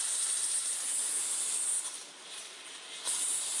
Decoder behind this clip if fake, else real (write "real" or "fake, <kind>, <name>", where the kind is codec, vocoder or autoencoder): real